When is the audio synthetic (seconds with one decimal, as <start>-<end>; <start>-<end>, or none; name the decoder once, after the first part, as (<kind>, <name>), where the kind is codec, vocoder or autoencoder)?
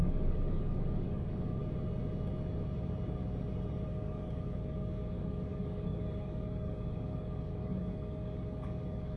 0.0-1.6 (codec, DAC); 3.9-9.2